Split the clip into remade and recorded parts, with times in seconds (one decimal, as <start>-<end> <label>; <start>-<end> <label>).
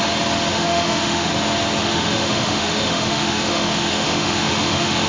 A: 0.0-0.5 recorded; 0.5-1.3 remade; 1.3-1.8 recorded; 1.8-5.1 remade